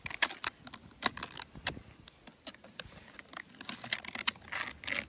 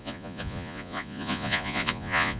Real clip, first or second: first